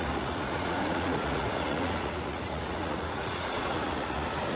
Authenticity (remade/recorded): remade